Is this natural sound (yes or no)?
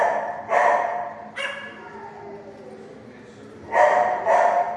yes